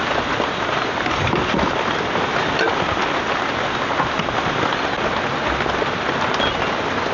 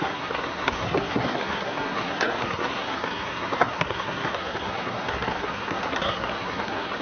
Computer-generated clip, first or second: second